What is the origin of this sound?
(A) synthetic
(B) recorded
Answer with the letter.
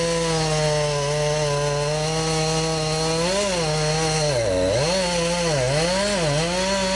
B